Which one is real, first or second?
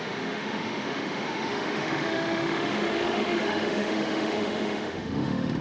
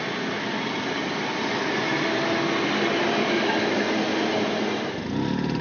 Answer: second